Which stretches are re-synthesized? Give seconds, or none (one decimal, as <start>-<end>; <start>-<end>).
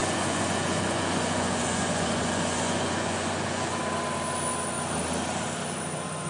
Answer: 0.0-3.8